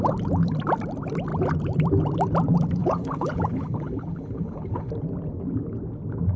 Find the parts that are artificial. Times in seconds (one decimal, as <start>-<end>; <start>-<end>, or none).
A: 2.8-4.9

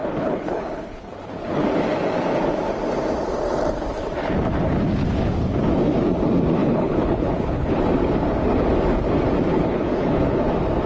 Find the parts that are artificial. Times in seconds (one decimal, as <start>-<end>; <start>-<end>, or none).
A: 0.0-1.3; 6.6-7.8; 9.5-10.4

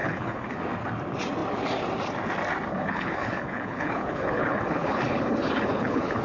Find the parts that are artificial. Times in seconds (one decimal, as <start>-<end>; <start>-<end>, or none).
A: 0.0-0.5; 2.7-6.2